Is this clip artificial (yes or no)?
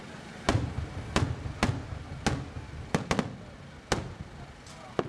no